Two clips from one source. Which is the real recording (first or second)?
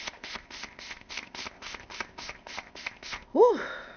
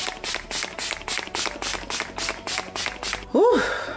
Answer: second